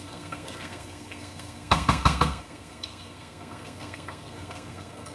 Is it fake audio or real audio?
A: fake